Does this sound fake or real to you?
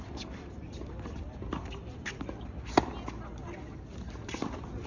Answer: real